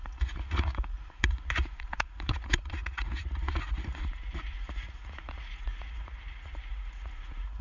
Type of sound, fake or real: fake